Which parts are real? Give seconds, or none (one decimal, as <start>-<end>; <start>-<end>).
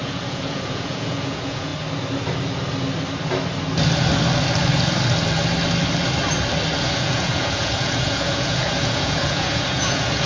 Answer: 1.7-6.8